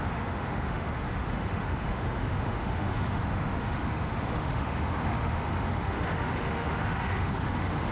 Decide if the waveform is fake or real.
fake